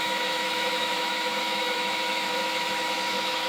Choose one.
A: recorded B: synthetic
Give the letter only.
B